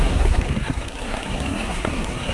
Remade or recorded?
remade